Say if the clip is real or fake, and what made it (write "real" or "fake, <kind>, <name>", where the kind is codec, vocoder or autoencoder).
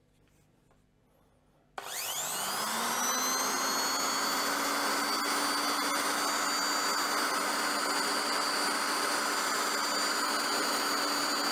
real